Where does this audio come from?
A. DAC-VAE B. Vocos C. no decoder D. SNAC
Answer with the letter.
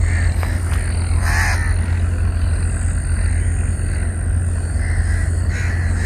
C